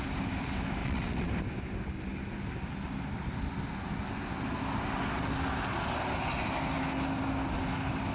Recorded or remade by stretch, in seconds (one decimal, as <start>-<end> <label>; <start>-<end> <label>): 0.0-0.8 recorded; 0.8-1.3 remade; 1.3-8.1 recorded